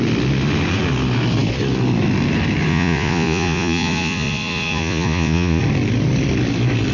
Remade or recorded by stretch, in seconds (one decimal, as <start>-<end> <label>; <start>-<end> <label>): 0.0-2.7 recorded; 2.7-5.6 remade; 5.6-6.9 recorded